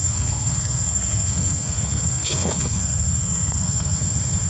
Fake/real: fake